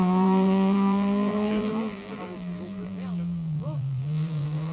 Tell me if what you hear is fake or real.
fake